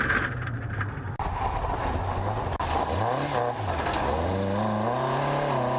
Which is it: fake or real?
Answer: real